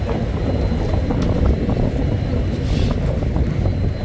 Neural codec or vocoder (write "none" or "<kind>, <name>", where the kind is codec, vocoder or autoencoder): none